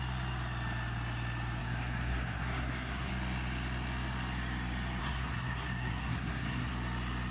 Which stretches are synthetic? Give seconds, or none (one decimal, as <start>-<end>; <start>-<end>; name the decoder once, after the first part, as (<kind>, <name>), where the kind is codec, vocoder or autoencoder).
1.6-3.1 (codec, SNAC); 5.0-6.7